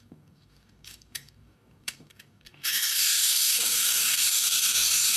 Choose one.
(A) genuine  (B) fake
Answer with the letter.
B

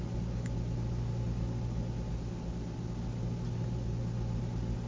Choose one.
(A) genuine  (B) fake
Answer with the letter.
A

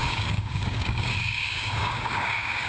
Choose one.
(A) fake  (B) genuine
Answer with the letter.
A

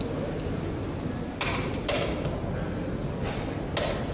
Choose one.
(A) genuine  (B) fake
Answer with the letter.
A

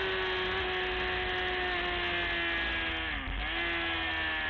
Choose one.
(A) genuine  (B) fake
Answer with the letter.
A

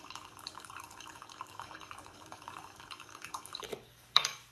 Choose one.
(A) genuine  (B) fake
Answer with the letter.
B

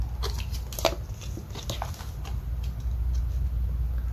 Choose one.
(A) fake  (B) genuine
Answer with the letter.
B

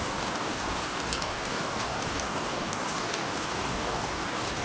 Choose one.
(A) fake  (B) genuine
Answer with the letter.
A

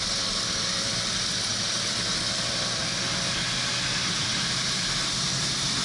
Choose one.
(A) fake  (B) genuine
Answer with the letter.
B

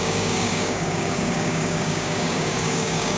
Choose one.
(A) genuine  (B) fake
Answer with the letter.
B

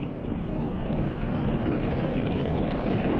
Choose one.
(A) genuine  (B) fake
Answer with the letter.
B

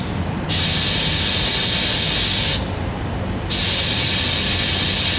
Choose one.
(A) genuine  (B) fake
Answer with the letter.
A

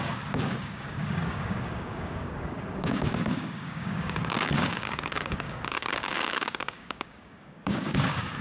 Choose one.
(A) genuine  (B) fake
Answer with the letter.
B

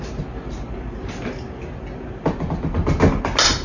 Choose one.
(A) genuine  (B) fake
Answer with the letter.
A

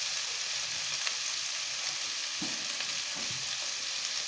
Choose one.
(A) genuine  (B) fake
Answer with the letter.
A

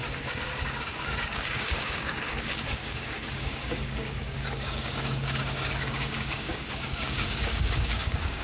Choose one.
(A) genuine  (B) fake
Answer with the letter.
B